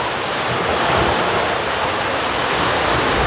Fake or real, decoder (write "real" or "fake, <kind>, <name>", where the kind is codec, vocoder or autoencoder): real